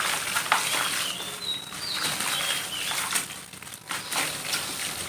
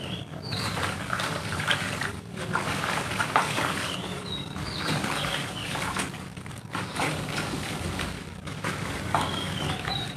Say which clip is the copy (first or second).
second